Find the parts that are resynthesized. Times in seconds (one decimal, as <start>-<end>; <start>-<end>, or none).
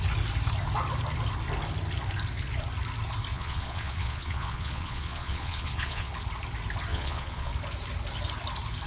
3.3-6.1; 6.9-7.5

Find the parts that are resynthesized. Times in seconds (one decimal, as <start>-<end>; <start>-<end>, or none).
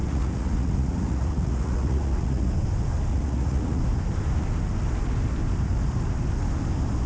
0.0-2.5; 3.1-3.8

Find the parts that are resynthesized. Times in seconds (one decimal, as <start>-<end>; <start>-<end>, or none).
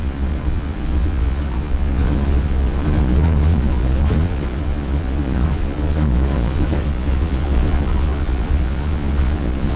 0.0-9.8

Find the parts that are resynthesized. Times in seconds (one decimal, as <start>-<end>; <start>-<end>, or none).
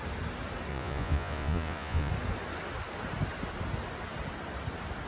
0.7-2.1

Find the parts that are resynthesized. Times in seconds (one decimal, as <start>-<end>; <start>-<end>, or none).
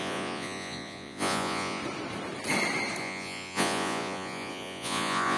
0.0-1.8; 3.0-5.4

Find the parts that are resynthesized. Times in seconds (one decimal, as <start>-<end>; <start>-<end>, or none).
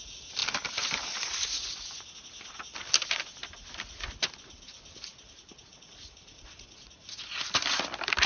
5.7-7.3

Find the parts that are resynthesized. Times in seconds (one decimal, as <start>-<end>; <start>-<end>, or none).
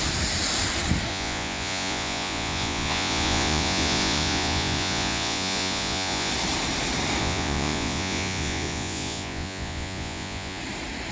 1.1-6.3; 7.2-10.6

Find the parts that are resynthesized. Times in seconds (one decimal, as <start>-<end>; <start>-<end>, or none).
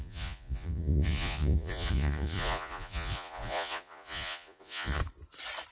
0.0-5.0